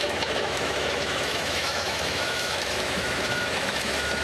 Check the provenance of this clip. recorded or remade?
remade